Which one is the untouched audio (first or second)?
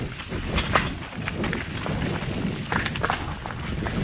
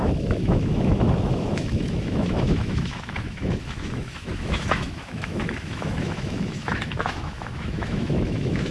first